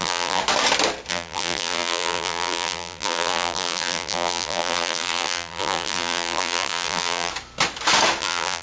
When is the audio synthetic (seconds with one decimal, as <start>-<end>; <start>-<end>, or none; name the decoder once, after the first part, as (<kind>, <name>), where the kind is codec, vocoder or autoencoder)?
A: 0.0-0.4 (vocoder, BigVGAN v2); 1.1-7.3; 8.2-8.6